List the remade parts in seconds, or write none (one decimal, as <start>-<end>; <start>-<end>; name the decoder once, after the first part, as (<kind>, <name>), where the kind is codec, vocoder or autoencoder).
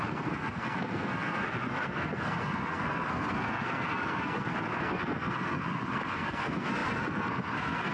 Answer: 0.0-7.9 (codec, SNAC)